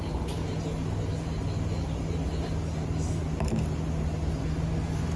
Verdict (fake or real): real